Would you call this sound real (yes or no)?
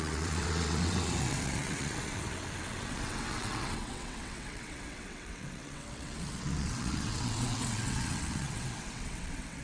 no